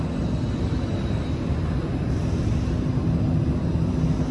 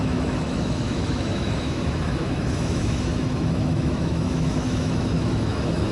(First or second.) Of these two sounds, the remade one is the second